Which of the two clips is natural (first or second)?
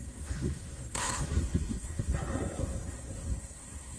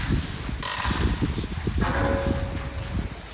second